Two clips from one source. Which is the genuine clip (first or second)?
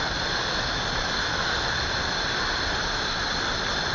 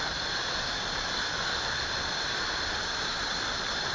first